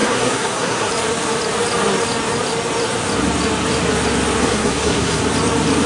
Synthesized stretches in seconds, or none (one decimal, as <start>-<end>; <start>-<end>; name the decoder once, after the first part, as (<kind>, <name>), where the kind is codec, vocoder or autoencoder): 0.0-0.9 (codec, SNAC); 4.4-5.2